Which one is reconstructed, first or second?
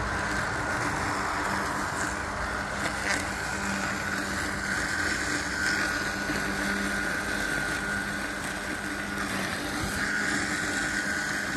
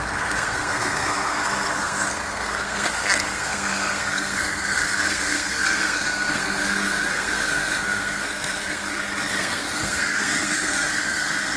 second